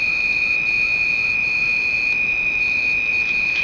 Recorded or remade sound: recorded